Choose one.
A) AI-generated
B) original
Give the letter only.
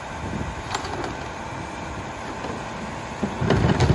B